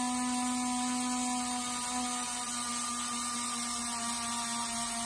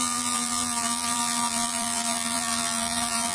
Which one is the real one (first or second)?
first